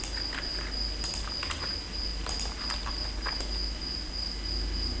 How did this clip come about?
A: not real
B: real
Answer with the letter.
B